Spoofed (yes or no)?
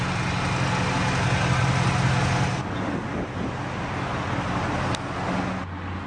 no